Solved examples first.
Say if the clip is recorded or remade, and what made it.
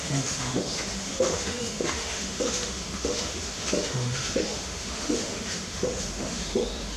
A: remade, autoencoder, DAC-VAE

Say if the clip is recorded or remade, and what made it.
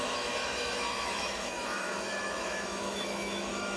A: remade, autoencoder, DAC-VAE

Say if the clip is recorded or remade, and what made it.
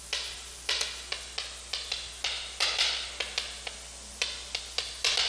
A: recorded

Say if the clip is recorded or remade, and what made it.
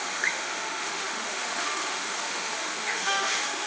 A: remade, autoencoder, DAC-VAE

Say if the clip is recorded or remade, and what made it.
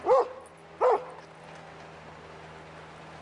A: recorded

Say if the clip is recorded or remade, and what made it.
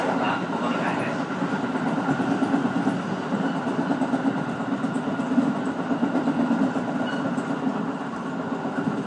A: recorded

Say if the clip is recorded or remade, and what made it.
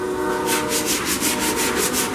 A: recorded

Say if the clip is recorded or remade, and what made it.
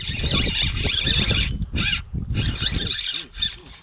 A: recorded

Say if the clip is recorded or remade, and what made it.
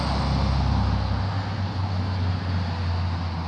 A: recorded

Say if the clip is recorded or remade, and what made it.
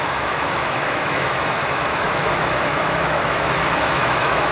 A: remade, autoencoder, DAC-VAE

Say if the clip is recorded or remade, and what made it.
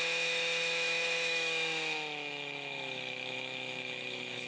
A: remade, autoencoder, DAC-VAE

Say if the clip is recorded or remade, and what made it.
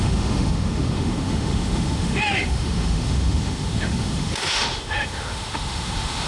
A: remade, autoencoder, DAC-VAE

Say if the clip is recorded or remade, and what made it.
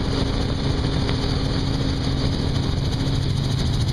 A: recorded